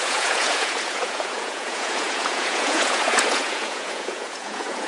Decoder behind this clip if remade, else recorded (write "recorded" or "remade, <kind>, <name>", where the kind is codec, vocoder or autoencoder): remade, vocoder, Vocos